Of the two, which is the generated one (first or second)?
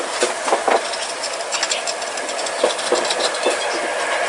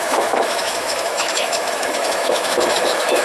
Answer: second